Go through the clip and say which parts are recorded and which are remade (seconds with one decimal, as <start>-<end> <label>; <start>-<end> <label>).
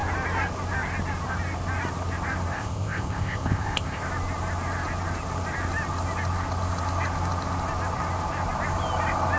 0.0-2.5 recorded; 2.5-4.0 remade; 4.0-9.4 recorded